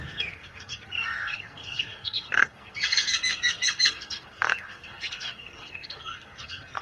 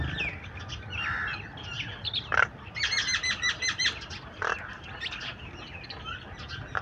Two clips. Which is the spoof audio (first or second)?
first